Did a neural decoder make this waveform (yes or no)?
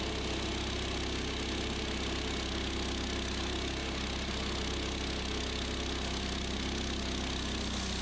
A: no